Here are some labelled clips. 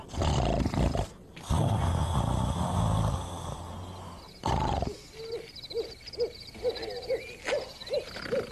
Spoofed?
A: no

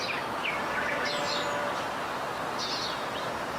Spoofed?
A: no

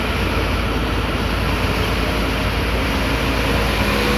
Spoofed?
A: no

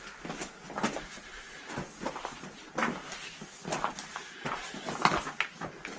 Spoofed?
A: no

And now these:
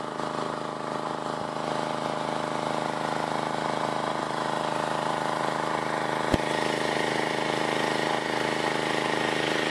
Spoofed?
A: no